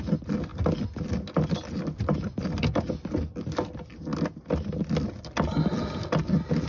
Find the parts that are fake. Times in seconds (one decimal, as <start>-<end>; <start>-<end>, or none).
none